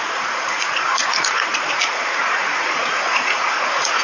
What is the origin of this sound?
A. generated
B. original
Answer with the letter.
A